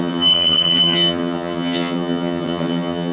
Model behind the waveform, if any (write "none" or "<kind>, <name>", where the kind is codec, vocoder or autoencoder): vocoder, HiFi-GAN